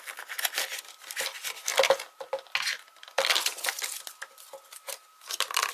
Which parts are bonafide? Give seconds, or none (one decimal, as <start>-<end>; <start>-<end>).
0.0-5.7